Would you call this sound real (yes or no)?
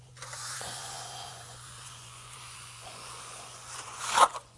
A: no